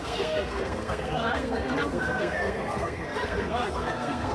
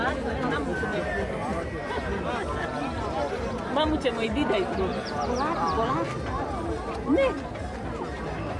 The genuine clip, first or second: second